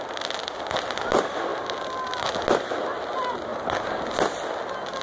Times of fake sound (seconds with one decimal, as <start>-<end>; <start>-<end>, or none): none